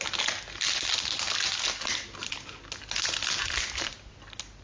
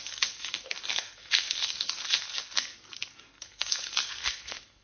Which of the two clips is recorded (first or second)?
first